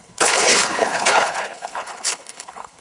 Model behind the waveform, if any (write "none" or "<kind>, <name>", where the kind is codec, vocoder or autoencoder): codec, HILCodec